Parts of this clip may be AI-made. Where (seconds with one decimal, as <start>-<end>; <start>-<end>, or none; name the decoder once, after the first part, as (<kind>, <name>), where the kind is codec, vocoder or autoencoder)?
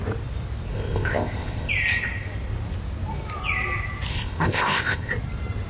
0.7-1.7 (codec, ZipCodec); 4.1-5.1